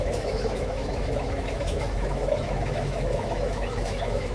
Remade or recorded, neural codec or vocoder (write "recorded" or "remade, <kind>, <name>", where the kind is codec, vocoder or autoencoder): remade, autoencoder, DAC-VAE